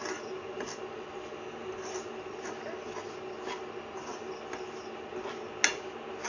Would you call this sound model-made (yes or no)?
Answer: no